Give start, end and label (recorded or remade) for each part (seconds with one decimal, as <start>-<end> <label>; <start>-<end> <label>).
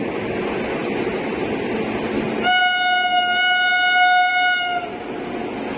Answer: 0.0-5.8 recorded